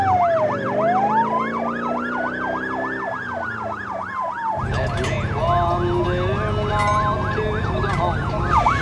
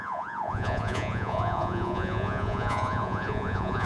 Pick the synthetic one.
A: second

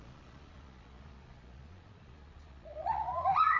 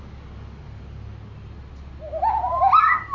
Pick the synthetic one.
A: first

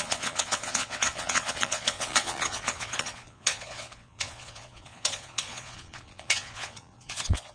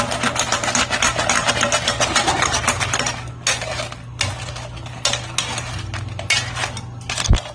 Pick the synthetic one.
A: first